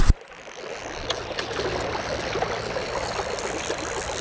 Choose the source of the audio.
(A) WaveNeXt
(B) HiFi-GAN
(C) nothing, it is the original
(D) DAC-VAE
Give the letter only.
C